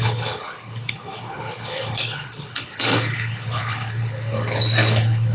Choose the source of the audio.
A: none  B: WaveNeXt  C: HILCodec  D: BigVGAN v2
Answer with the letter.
C